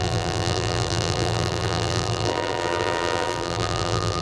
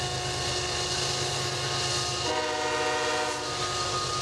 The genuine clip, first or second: second